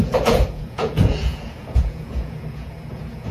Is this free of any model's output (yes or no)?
no